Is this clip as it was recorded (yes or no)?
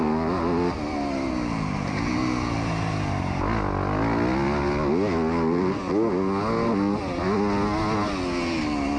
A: yes